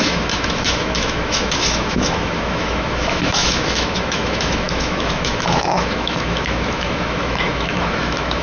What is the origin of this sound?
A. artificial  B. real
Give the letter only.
A